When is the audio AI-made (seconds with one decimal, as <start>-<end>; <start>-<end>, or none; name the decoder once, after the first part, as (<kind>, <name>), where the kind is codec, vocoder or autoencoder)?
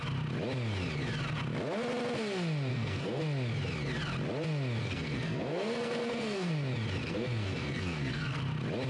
2.7-3.2 (codec, SNAC); 4.8-6.5; 7.0-8.4